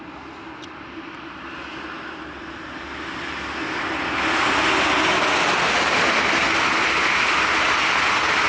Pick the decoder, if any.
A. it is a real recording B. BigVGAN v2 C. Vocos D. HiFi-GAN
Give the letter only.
A